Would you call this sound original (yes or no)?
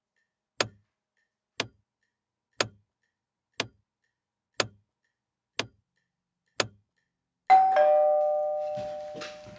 yes